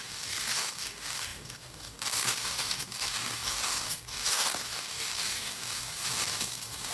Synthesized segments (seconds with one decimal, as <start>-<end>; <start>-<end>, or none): 0.0-6.9